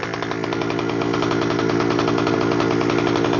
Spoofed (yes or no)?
no